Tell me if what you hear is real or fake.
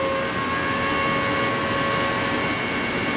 real